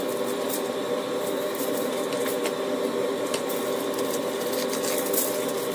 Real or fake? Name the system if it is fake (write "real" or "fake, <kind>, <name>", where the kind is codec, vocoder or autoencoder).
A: real